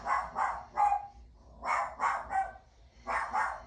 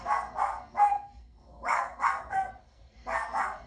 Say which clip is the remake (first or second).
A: second